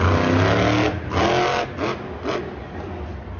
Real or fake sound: real